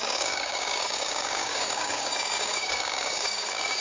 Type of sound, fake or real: fake